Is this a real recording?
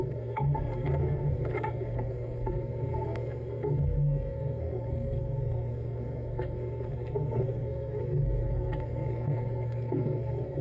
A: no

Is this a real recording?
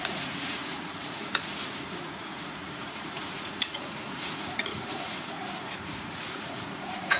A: no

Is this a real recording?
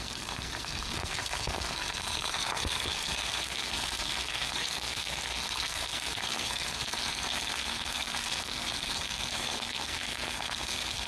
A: no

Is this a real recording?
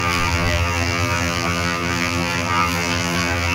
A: no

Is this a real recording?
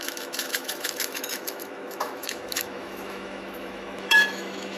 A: no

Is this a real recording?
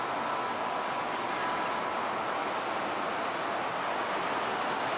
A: yes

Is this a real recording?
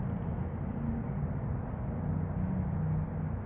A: yes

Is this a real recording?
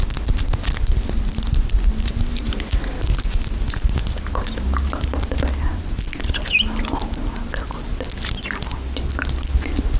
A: yes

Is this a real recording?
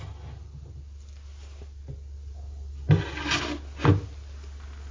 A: yes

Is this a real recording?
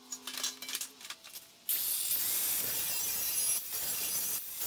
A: yes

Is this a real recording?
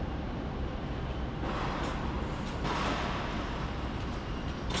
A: yes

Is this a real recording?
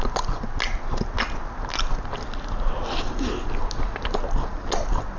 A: yes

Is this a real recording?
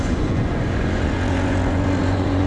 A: no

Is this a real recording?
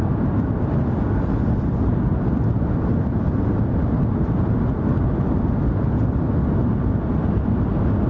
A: yes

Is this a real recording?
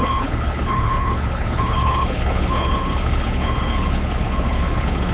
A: no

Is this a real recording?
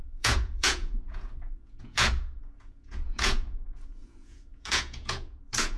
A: no